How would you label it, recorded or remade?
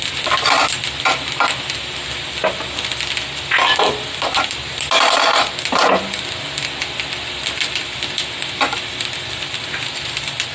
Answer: recorded